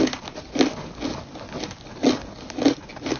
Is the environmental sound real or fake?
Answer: real